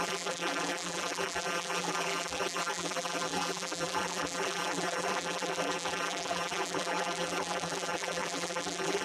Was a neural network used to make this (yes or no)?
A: yes